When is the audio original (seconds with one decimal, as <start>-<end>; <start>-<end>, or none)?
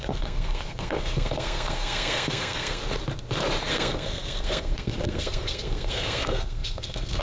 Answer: 2.8-3.7